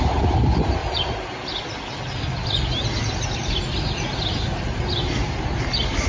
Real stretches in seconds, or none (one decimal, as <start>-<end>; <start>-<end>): 0.0-3.4; 4.0-6.1

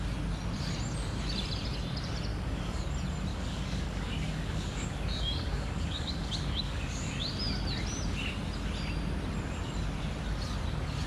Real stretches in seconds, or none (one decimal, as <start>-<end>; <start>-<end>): 0.0-2.3; 2.8-3.3; 7.3-11.1

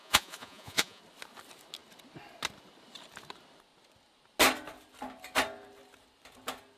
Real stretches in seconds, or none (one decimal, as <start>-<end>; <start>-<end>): 1.0-6.8

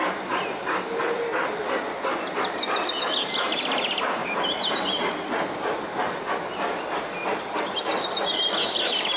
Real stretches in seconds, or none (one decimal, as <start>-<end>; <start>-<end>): 0.0-1.6; 2.6-9.2

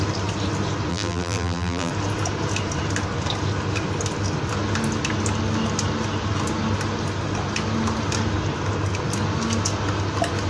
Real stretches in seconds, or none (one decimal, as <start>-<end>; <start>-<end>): 0.0-0.9; 1.9-10.5

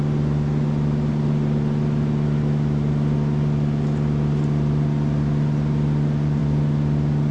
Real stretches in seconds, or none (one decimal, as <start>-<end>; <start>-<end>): 0.0-7.3